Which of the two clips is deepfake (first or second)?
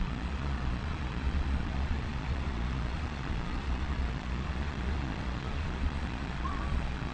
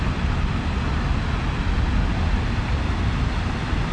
first